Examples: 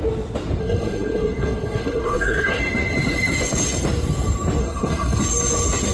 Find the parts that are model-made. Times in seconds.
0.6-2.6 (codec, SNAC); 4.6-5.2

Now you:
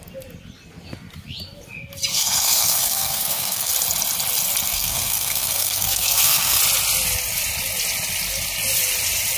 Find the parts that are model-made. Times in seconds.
2.1-3.7 (codec, SNAC); 4.7-6.6

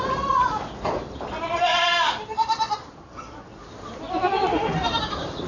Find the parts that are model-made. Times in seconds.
none

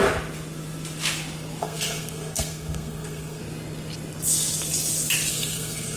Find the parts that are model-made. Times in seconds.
1.6-3.4 (codec, SNAC); 5.3-6.0

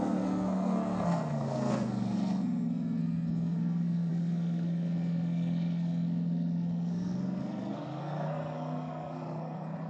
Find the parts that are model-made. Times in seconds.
0.0-9.9 (codec, SNAC)